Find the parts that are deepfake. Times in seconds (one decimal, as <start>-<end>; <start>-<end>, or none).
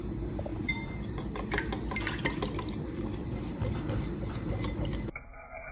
0.5-1.2